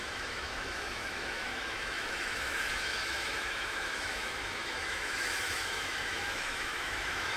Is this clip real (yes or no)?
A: no